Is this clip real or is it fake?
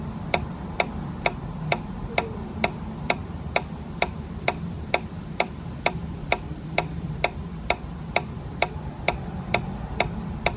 fake